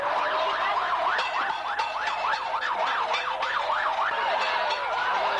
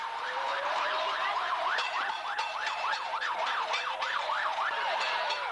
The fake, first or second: second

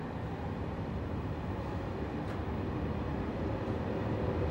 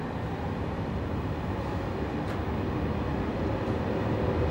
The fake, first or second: first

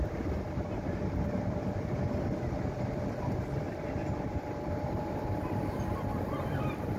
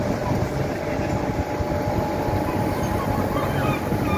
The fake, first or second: first